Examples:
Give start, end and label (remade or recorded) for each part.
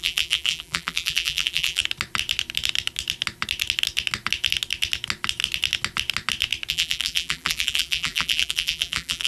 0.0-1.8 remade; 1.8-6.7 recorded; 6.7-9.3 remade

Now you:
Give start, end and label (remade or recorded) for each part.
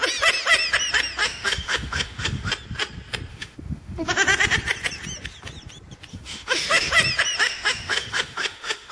0.0-1.2 recorded; 1.2-2.5 remade; 2.5-3.3 recorded; 3.3-4.1 remade; 4.1-6.1 recorded; 6.1-6.9 remade; 6.9-7.4 recorded; 7.4-8.9 remade